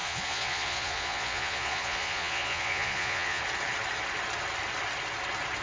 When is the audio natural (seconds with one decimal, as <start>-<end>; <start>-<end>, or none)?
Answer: 3.4-5.6